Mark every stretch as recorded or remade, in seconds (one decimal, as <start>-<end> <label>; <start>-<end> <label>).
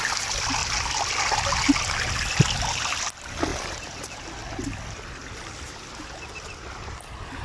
0.0-5.2 recorded; 5.2-7.0 remade; 7.0-7.4 recorded